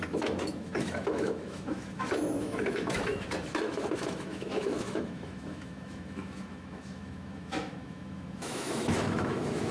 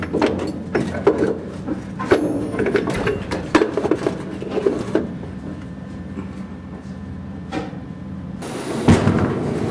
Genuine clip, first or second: second